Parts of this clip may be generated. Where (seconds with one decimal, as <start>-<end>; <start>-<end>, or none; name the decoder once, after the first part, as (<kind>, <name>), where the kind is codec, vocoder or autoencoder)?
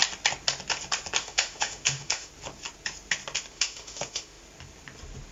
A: 1.2-2.3 (autoencoder, DAC-VAE); 3.5-4.4